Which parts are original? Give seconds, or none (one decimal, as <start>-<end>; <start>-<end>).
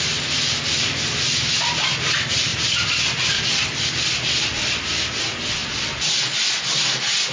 0.0-5.6; 6.1-7.3